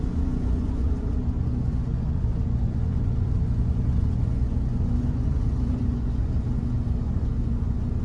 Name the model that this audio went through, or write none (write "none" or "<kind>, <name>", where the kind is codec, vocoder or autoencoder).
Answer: vocoder, Vocos